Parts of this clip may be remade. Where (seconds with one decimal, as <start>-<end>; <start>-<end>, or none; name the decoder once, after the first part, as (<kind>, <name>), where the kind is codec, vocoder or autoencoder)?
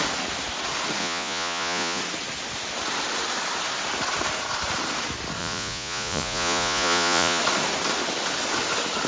1.0-2.0 (vocoder, Vocos); 5.4-7.4